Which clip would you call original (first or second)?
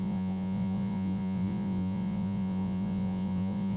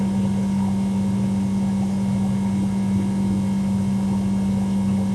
second